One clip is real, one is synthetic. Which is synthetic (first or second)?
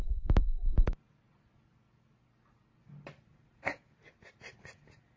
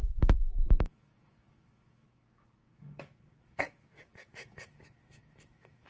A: second